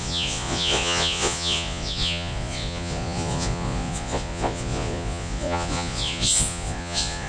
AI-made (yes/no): yes